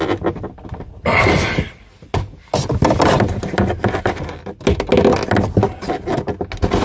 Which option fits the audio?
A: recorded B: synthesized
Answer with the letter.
A